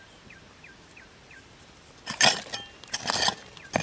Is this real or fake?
real